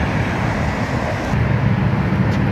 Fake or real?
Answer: real